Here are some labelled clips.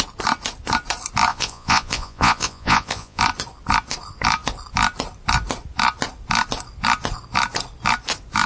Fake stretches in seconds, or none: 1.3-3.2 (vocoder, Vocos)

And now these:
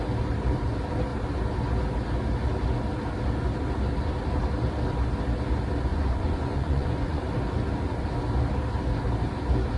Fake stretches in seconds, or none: 5.9-7.2 (vocoder, Vocos)

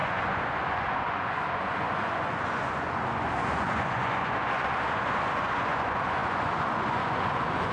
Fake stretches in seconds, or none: 0.0-7.7 (vocoder, Vocos)

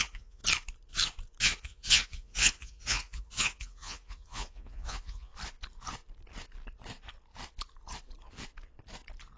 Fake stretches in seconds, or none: 0.0-0.4 (vocoder, Vocos); 1.4-5.3

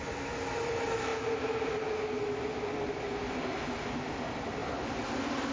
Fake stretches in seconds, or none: none